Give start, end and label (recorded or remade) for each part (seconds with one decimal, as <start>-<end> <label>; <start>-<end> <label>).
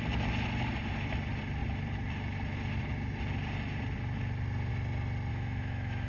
0.0-5.3 recorded; 5.3-6.1 remade